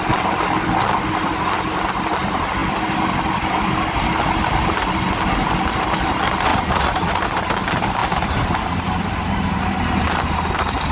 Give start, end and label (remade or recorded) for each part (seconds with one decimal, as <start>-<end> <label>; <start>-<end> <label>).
0.0-6.5 recorded; 6.5-7.1 remade; 7.1-10.9 recorded